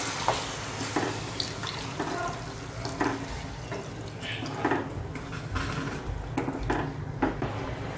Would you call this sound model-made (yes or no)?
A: no